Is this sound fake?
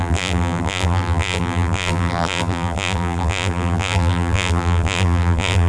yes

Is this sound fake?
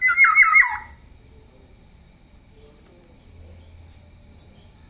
no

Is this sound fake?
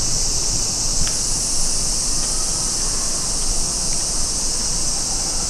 no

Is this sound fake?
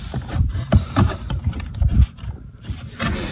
yes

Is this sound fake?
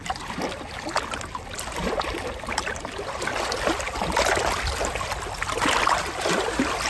no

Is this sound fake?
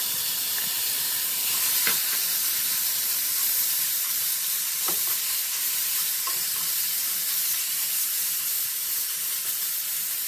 yes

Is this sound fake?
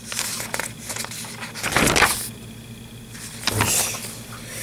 no